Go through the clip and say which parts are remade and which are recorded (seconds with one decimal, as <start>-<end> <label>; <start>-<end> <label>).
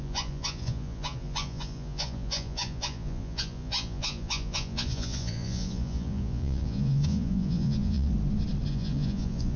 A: 0.0-8.1 remade; 8.1-8.7 recorded; 8.7-9.6 remade